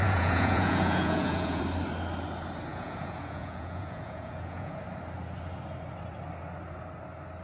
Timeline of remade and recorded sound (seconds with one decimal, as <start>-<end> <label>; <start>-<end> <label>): 0.0-1.6 remade; 1.6-2.7 recorded; 2.7-4.8 remade; 4.8-7.4 recorded